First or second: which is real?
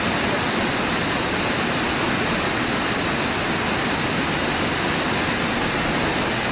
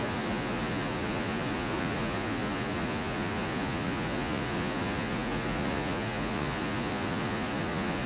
first